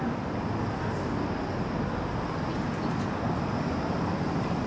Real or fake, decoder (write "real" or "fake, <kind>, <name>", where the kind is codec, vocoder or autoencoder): real